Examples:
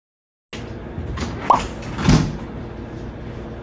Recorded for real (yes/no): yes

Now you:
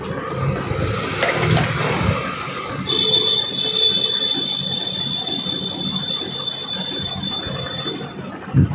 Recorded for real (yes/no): yes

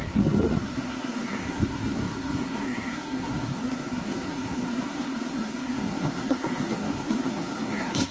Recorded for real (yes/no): no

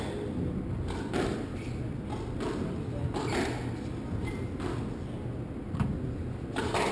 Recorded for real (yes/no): yes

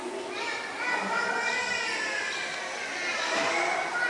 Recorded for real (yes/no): yes